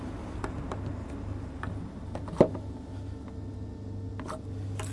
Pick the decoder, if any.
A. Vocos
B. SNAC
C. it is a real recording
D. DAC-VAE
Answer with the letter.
C